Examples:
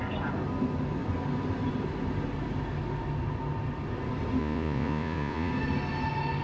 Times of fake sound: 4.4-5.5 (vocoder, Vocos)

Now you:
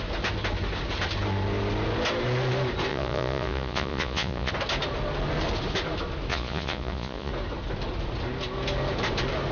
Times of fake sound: 2.9-4.5 (vocoder, Vocos); 6.3-7.3

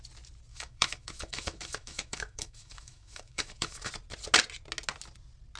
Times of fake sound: 0.5-3.9 (autoencoder, DAC-VAE)

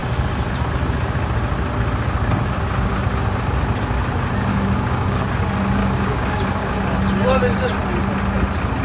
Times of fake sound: 4.5-5.2 (codec, DAC); 5.8-6.8

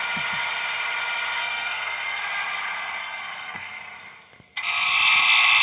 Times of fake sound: 1.4-2.2 (codec, SNAC); 3.0-3.8

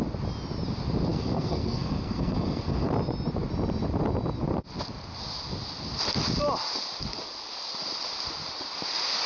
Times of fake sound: 1.1-2.9 (codec, SNAC)

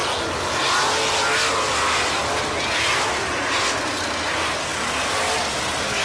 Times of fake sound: none